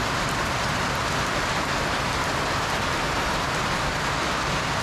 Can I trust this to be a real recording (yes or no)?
yes